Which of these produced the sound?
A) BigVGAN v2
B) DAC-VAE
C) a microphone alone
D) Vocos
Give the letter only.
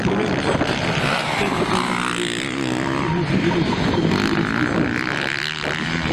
C